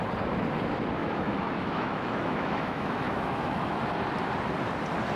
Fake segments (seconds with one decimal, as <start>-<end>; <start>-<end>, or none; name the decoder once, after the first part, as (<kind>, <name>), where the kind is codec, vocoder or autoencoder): 1.0-3.8 (autoencoder, DAC-VAE)